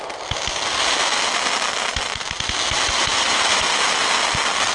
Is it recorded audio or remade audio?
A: recorded